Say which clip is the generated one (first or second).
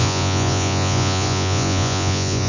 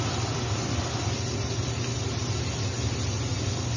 first